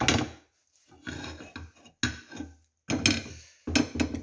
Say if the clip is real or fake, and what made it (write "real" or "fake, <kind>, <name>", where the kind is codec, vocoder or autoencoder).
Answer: real